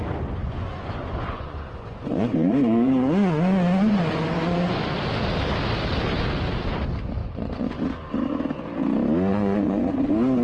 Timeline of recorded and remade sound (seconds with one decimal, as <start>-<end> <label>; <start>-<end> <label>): 0.0-0.4 recorded; 0.4-4.8 remade; 4.8-7.2 recorded; 7.2-7.8 remade; 7.8-9.3 recorded; 9.3-10.0 remade; 10.0-10.4 recorded